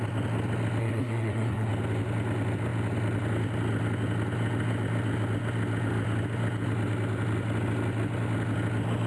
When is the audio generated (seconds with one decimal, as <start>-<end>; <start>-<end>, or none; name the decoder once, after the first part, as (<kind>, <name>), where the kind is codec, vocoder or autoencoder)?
0.8-1.7 (codec, SNAC)